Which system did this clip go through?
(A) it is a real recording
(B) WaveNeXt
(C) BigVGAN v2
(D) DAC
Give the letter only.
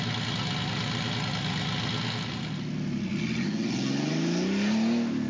A